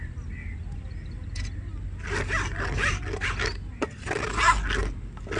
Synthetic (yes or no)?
no